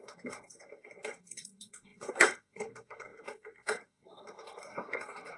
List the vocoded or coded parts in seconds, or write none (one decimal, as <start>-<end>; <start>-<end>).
0.0-5.4